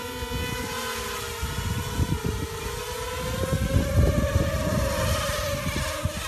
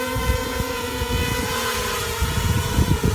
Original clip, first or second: first